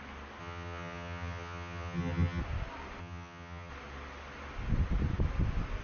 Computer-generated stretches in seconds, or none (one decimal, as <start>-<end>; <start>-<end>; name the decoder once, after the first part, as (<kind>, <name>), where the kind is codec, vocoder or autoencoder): 0.4-2.4 (vocoder, HiFi-GAN); 3.0-3.7